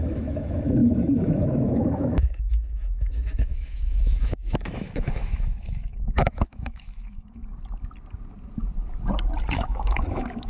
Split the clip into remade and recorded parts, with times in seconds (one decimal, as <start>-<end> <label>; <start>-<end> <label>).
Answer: 0.0-7.4 remade; 7.4-9.5 recorded; 9.5-10.5 remade